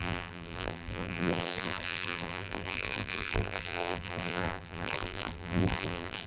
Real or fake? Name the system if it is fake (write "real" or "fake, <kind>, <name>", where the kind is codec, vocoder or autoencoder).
fake, vocoder, BigVGAN v2